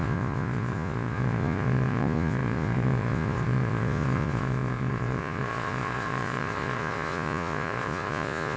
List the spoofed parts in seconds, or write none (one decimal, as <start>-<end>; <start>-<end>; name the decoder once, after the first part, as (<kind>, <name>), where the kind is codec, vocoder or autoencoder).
0.0-8.6 (vocoder, Vocos)